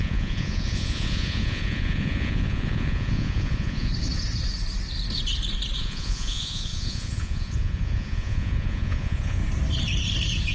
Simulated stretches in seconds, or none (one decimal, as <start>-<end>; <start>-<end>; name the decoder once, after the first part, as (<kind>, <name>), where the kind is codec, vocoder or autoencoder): 0.0-3.9 (vocoder, Vocos); 5.8-9.4